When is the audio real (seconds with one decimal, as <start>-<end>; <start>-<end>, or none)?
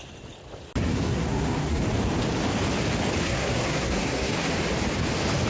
0.0-0.8; 1.8-3.2; 4.5-5.5